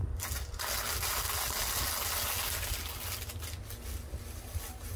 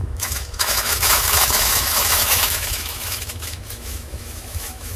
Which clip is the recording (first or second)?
first